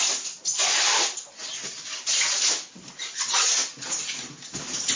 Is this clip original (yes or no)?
yes